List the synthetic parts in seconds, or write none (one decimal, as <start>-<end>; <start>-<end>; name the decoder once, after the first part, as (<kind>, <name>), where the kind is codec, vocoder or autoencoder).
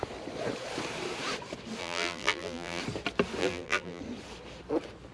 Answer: 1.8-2.8 (vocoder, BigVGAN v2); 3.4-4.0